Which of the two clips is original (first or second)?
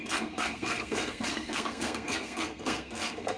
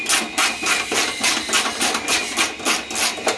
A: second